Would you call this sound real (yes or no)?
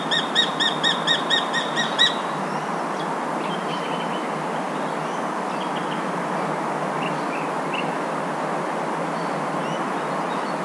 yes